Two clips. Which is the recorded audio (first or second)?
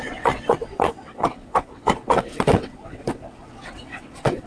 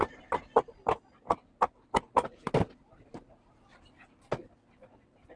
second